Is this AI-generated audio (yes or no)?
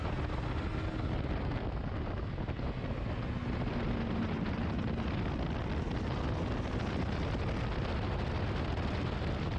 no